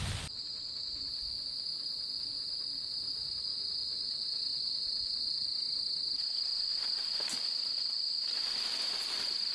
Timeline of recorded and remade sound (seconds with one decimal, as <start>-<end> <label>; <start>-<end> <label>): 0.0-9.5 recorded